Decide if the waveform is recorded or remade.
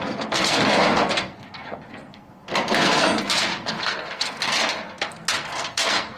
remade